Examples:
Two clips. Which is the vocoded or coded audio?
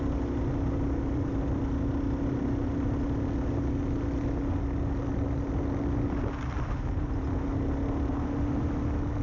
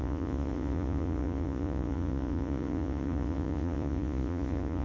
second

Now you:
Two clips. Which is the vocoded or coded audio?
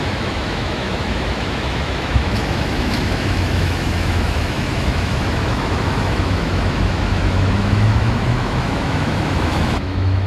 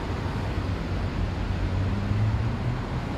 first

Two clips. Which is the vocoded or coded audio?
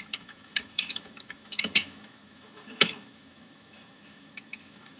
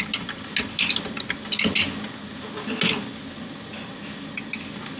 first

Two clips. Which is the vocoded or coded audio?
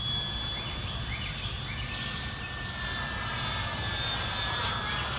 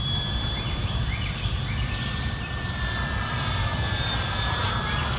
second